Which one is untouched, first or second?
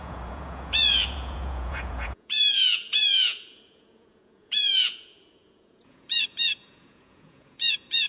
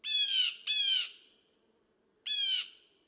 second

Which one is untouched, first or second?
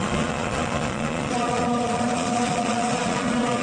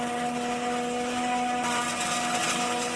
second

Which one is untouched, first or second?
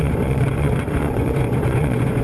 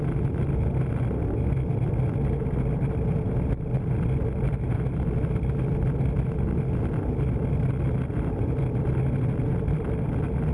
second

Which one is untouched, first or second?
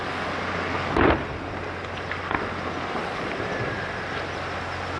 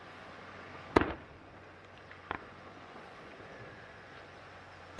first